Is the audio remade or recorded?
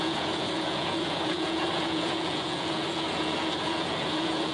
remade